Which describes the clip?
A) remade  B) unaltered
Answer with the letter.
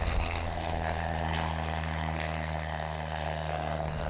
A